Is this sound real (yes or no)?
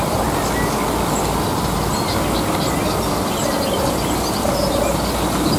yes